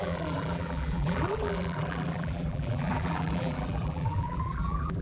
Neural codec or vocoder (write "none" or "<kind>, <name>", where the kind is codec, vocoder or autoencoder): vocoder, BigVGAN v2